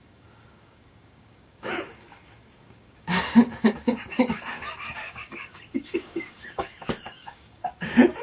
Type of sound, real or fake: fake